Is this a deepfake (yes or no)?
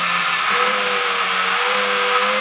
no